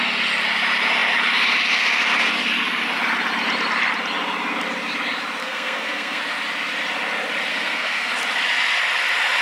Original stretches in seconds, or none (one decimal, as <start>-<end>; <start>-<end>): 0.0-5.4; 6.2-7.5; 8.1-9.4